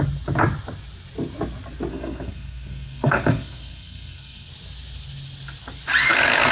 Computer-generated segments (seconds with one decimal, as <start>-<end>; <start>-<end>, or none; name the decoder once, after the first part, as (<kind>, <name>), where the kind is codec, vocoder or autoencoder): 1.9-4.5 (codec, SNAC)